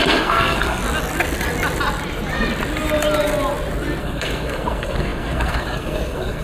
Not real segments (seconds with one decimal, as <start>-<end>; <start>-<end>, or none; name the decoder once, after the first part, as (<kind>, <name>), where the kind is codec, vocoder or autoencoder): 0.0-0.8 (codec, SNAC); 4.0-6.4